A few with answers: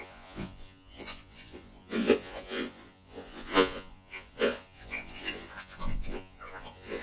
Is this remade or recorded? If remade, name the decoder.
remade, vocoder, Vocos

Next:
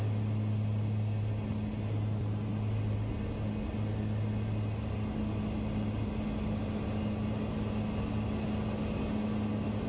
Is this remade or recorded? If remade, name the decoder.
recorded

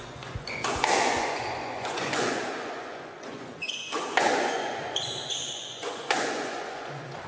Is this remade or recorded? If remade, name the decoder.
remade, vocoder, Vocos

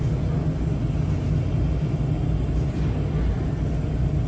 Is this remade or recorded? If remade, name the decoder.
recorded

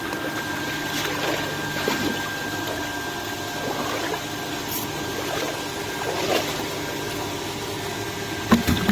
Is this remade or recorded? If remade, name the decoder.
recorded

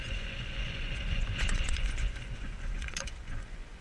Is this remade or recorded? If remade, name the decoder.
remade, vocoder, Vocos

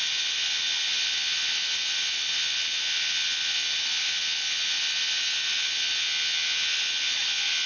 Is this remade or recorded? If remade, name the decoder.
recorded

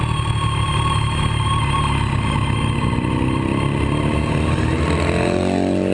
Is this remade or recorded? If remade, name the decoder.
recorded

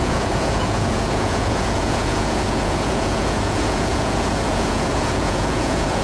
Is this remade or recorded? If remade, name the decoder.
remade, vocoder, Vocos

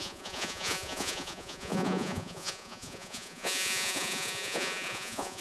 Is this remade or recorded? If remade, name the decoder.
remade, vocoder, Vocos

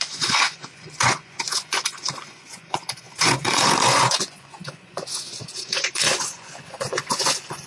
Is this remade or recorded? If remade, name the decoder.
remade, vocoder, Vocos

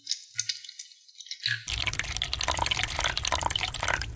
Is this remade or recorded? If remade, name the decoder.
recorded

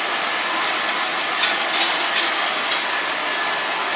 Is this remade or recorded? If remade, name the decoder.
recorded